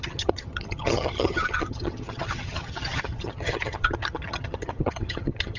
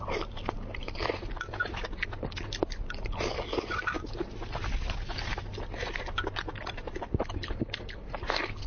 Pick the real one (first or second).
second